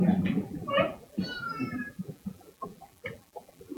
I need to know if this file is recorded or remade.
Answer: remade